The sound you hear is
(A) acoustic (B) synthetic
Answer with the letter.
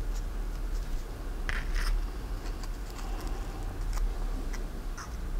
A